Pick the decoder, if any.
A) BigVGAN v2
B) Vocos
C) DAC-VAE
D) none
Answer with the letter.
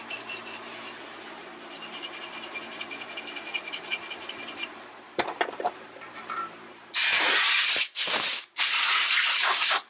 A